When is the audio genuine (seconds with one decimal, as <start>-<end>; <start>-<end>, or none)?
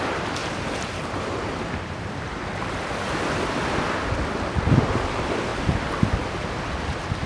0.0-0.4; 2.4-7.3